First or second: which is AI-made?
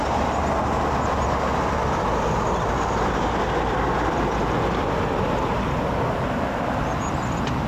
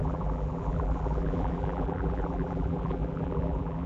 second